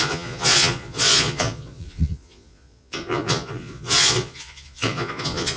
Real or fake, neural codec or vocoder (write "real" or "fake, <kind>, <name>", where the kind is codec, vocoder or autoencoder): fake, vocoder, Vocos